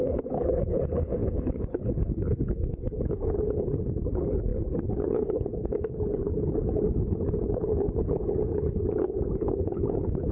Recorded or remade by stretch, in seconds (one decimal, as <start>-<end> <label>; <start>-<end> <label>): 0.0-10.3 remade